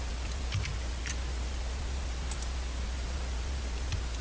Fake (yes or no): no